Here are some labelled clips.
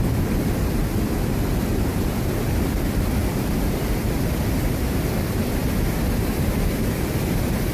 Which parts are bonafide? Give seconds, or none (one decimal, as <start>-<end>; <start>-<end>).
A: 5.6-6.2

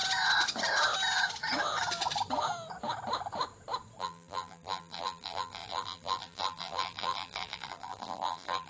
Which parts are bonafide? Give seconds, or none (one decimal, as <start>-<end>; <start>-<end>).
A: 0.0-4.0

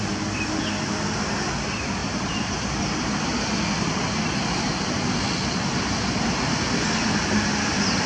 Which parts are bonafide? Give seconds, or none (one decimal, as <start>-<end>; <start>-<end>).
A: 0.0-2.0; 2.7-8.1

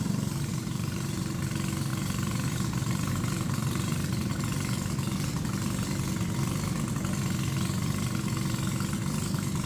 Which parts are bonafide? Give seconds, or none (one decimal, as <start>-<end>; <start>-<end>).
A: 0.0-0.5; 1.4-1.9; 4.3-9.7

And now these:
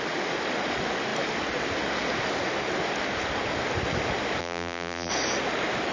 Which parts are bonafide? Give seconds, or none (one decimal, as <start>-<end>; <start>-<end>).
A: 0.0-4.4; 5.1-5.9

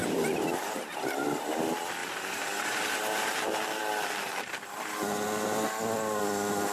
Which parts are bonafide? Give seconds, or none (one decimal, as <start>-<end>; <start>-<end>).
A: 1.5-2.0; 3.4-6.7

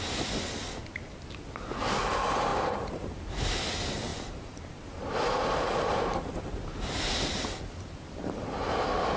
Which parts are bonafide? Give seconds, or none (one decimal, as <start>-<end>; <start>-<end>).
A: 0.0-2.5; 3.1-4.1; 8.7-9.2

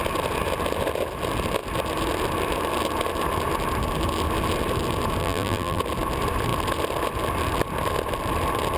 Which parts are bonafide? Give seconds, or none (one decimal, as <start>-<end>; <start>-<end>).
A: 0.0-5.2; 5.8-8.8